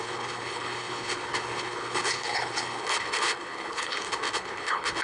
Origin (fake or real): fake